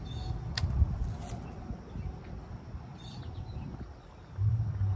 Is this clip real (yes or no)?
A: yes